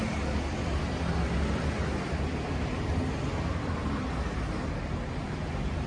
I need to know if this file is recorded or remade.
recorded